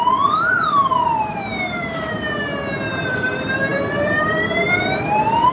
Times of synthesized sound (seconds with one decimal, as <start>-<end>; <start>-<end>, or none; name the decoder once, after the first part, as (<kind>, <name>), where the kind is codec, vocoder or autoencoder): 0.0-0.9 (vocoder, BigVGAN v2); 2.9-5.5